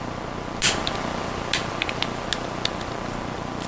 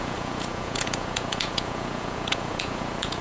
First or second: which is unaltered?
first